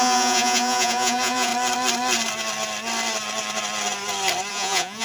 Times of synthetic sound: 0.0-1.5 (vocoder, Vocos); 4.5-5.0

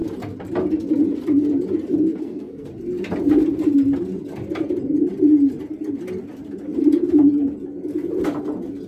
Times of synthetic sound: 2.1-2.7 (codec, SNAC)

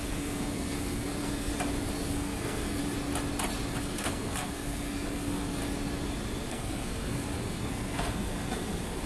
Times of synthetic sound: 0.0-1.5 (codec, SNAC); 2.1-2.8; 3.8-5.6; 6.5-9.1

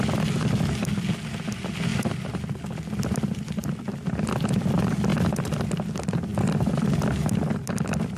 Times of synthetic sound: 1.9-2.6 (vocoder, BigVGAN v2); 5.1-5.7; 6.3-6.8